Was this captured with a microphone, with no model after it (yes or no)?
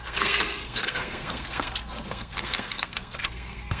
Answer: no